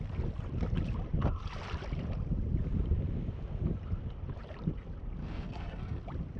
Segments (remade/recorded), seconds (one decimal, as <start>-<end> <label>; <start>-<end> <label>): 0.0-5.2 recorded; 5.2-6.0 remade; 6.0-6.4 recorded